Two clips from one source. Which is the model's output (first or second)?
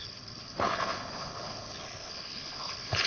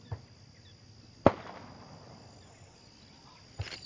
first